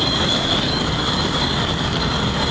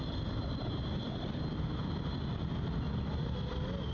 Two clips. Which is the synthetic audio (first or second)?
first